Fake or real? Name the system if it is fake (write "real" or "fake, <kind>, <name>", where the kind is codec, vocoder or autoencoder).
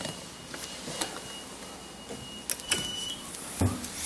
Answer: real